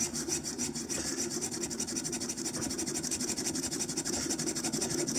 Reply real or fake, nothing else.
real